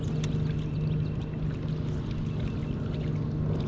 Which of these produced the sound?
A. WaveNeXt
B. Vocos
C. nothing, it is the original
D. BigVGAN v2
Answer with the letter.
C